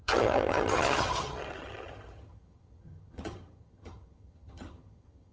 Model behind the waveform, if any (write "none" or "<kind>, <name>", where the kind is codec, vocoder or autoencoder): vocoder, HiFi-GAN